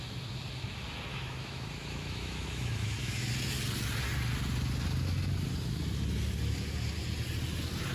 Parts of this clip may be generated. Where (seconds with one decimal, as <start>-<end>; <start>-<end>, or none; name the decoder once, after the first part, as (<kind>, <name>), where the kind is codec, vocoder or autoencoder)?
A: 1.1-3.3 (autoencoder, DAC-VAE)

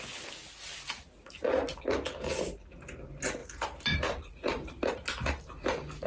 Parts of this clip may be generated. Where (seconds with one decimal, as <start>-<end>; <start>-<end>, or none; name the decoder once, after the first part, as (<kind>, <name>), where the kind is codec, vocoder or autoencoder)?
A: 3.4-4.9 (vocoder, BigVGAN v2)

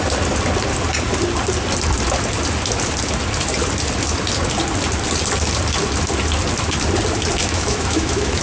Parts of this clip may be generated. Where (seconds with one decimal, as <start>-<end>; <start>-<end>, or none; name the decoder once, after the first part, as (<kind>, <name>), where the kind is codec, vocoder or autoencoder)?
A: 7.4-8.4 (autoencoder, DAC-VAE)

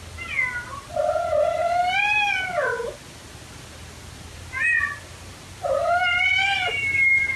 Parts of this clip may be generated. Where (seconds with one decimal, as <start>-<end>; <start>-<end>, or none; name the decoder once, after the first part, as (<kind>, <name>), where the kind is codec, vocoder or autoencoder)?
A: none

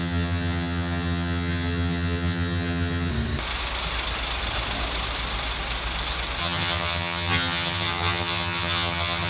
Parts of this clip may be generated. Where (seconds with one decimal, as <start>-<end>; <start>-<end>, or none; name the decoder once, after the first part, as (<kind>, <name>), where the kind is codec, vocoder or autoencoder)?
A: 0.0-3.1 (vocoder, HiFi-GAN); 6.4-9.3

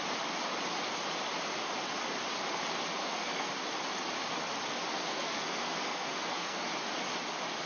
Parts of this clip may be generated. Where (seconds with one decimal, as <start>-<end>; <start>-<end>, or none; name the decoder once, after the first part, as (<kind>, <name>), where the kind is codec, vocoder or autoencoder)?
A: 3.0-3.5 (codec, SNAC); 4.9-6.6

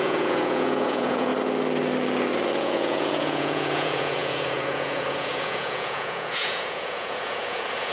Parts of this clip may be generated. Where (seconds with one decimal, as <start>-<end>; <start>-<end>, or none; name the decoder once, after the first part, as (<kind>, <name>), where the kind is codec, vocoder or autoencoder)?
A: 0.0-1.3 (vocoder, Vocos); 2.6-7.9